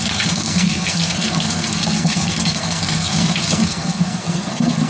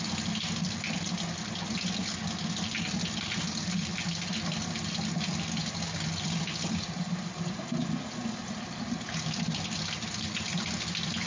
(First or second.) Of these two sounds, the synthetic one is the first